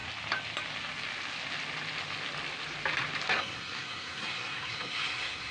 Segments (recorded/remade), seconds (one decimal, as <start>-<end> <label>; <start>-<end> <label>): 0.0-3.3 recorded; 3.3-5.5 remade